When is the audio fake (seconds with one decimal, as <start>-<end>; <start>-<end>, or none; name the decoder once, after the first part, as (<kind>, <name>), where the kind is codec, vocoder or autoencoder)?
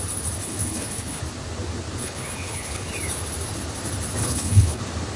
0.4-1.2 (codec, HILCodec); 2.0-2.9; 4.2-4.8